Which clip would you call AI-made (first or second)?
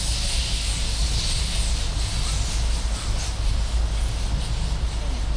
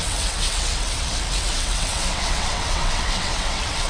second